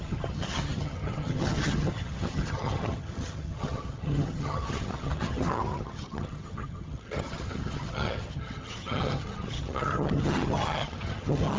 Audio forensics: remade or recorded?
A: remade